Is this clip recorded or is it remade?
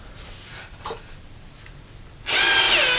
recorded